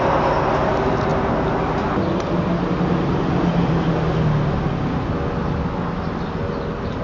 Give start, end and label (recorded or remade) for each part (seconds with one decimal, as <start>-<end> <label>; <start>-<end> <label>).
0.0-7.0 recorded